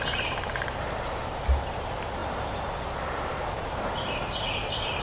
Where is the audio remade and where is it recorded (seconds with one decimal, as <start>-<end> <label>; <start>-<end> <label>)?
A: 0.0-5.0 remade